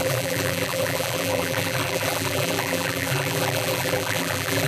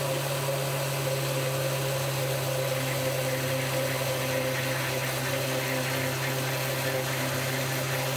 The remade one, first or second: first